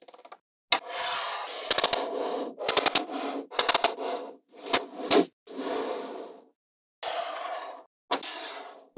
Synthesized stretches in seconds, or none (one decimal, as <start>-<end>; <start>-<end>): none